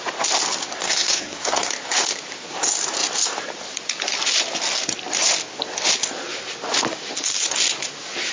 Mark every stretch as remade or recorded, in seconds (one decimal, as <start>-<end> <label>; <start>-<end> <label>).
0.0-0.8 recorded; 0.8-1.7 remade; 1.7-8.3 recorded